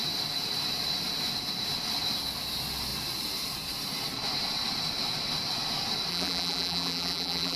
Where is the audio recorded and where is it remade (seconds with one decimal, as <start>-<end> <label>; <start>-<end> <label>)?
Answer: 0.0-6.1 recorded; 6.1-7.6 remade